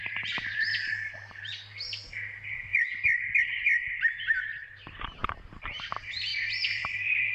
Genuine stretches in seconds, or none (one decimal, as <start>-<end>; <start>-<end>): 1.5-4.5; 5.8-7.3

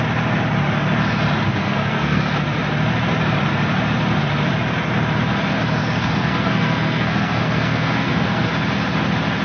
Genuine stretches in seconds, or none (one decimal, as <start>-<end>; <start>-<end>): 0.0-1.6; 2.2-5.8; 8.5-9.4

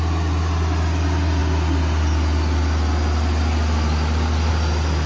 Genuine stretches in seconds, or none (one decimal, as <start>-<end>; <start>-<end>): 0.0-5.1

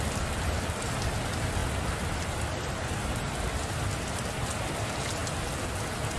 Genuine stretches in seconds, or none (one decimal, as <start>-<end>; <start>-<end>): 0.0-6.2

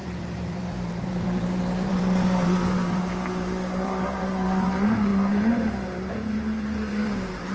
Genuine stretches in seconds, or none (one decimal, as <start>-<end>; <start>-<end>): none

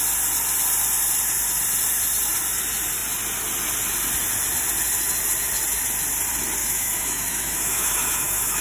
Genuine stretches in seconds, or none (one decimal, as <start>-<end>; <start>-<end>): 0.0-6.6

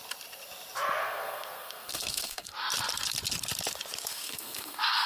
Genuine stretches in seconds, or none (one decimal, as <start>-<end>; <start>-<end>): 0.0-1.0; 2.5-4.1